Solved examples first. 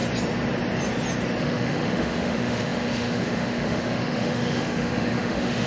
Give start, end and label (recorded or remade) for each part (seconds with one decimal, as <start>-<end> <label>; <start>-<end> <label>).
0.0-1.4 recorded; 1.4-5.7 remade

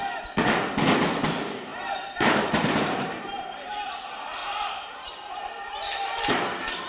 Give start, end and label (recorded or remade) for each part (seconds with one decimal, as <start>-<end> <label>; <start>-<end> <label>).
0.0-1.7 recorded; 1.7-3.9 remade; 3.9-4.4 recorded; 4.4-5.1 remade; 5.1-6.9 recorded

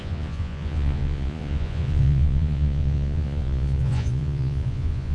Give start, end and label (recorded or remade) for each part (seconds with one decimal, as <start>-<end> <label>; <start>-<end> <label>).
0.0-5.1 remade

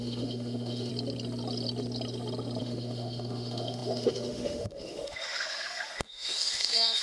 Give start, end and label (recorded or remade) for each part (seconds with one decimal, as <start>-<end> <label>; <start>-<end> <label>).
0.0-0.9 remade; 0.9-2.6 recorded; 2.6-7.0 remade

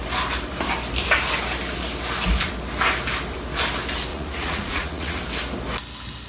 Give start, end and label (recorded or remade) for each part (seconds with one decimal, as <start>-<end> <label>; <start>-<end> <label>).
0.0-4.1 recorded; 4.1-5.2 remade; 5.2-6.3 recorded

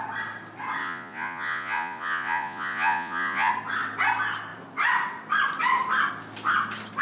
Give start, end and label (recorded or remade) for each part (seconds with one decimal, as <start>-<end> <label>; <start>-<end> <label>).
0.0-0.8 recorded; 0.8-3.5 remade; 3.5-7.0 recorded

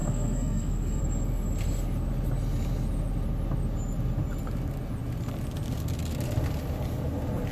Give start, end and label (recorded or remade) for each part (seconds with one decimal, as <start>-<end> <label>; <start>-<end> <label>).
0.0-1.0 remade; 1.0-7.5 recorded

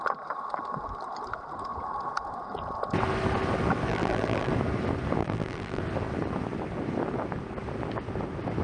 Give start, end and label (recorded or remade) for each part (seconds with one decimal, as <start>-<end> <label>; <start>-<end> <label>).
0.0-3.9 recorded; 3.9-4.5 remade; 4.5-5.2 recorded; 5.2-5.8 remade; 5.8-8.6 recorded